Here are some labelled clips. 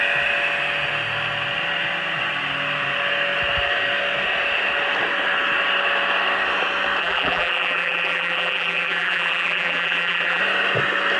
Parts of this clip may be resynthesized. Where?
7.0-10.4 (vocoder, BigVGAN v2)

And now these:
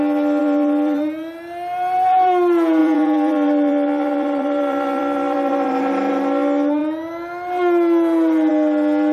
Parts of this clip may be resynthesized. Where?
0.4-2.1 (vocoder, BigVGAN v2); 2.8-6.1

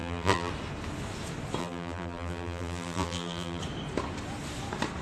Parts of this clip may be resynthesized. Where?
0.0-0.5 (vocoder, BigVGAN v2); 1.6-3.6

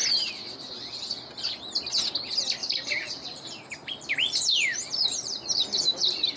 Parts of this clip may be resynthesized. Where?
0.0-1.1 (vocoder, BigVGAN v2); 2.6-6.4